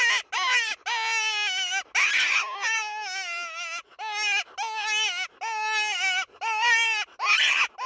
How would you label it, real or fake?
real